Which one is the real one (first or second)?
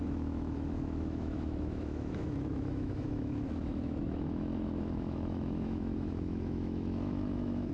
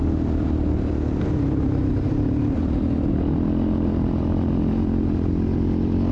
second